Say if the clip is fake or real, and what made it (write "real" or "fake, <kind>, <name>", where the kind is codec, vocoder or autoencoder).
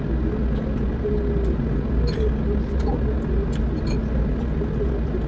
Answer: real